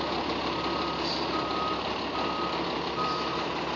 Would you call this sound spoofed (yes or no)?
no